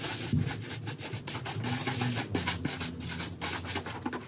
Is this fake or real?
real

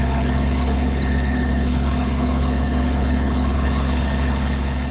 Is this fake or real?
fake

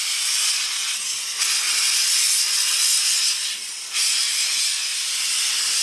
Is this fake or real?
real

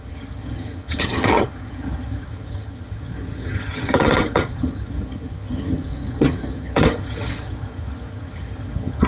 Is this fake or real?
fake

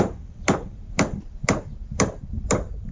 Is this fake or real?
fake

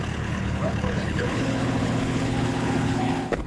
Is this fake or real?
fake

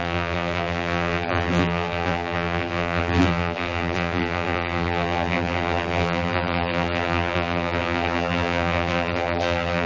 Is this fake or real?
fake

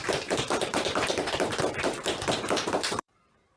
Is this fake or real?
fake